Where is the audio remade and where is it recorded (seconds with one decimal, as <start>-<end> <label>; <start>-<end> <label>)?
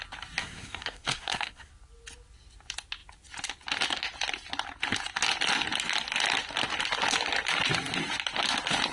0.0-0.4 recorded; 0.4-1.7 remade; 1.7-8.9 recorded